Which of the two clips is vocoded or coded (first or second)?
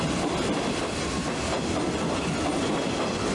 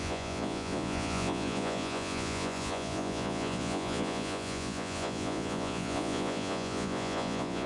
second